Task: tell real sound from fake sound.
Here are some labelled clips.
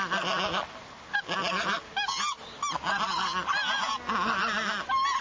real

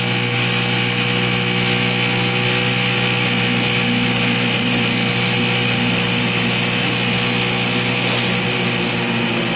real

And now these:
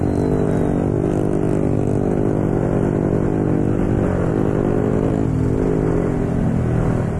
real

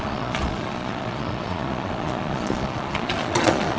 fake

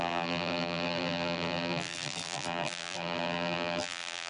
fake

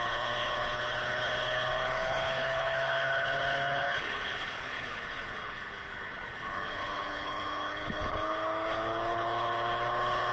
fake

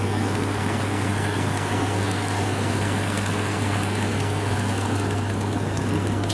fake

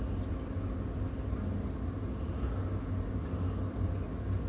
real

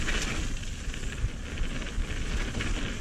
real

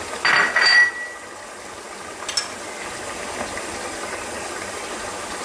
real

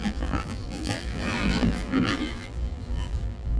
fake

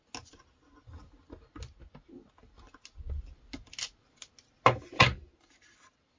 real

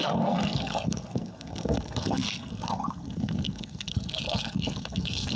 fake